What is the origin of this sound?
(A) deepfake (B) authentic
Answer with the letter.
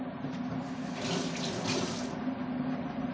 B